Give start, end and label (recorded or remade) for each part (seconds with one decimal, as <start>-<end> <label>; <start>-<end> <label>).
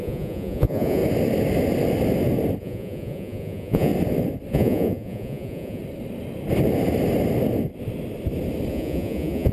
0.0-1.0 remade; 1.0-2.6 recorded; 2.6-3.9 remade; 3.9-4.5 recorded; 4.5-5.8 remade; 5.8-8.7 recorded; 8.7-9.5 remade